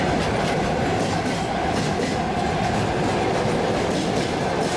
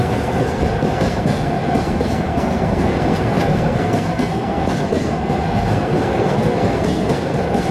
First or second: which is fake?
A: second